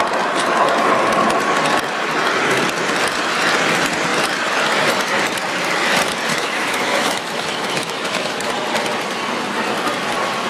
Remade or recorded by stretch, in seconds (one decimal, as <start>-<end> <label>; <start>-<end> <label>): 0.0-6.3 recorded; 6.3-8.5 remade; 8.5-10.5 recorded